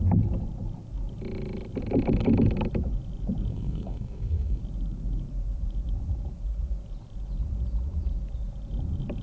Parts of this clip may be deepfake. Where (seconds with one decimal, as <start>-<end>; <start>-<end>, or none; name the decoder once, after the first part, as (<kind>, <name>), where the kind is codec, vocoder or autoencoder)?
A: 3.5-4.6 (codec, SNAC)